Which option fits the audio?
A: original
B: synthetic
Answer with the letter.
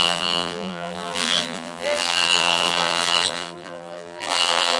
B